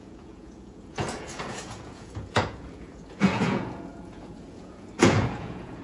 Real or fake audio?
fake